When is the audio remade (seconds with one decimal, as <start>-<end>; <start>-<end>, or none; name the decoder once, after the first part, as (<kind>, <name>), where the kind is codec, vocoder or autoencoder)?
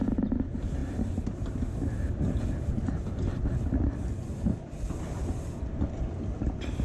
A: none